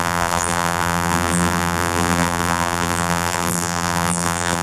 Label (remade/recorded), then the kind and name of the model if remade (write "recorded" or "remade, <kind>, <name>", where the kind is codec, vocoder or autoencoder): remade, vocoder, BigVGAN v2